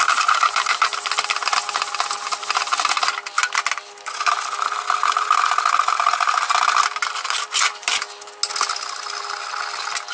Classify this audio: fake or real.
real